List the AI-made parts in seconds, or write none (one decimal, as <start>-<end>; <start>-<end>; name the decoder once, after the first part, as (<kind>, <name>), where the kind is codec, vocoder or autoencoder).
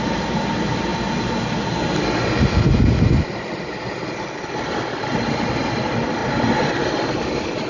none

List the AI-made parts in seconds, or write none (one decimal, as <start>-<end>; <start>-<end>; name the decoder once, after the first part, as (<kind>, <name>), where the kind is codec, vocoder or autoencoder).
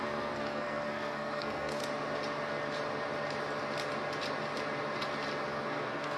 0.0-1.8 (codec, SNAC); 5.5-6.2